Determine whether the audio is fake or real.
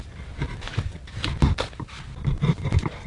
real